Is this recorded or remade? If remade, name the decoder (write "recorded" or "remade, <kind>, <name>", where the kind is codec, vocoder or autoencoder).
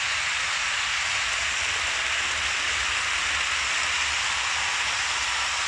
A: recorded